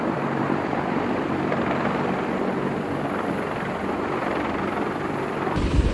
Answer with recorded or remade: remade